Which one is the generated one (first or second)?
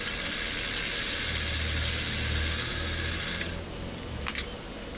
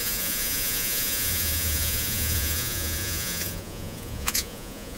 second